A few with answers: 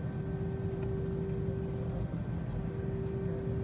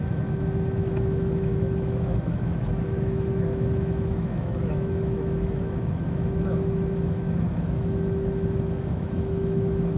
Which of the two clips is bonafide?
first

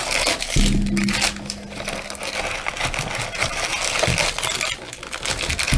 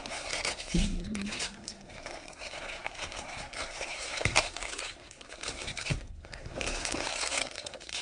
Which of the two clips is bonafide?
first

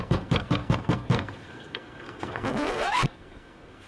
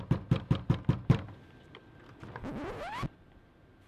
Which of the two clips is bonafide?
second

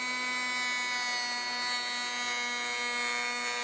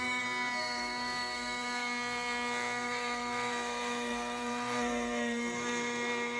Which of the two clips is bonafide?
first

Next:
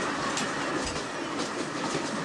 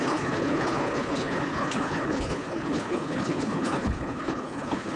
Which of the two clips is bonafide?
first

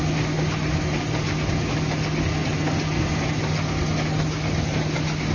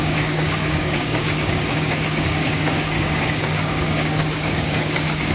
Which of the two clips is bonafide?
first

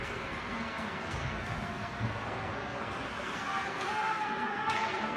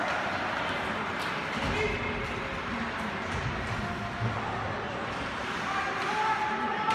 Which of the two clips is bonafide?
second